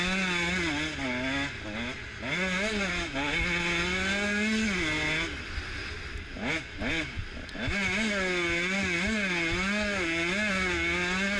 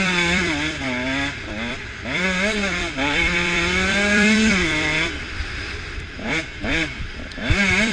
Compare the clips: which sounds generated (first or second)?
second